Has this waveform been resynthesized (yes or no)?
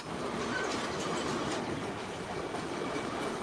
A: no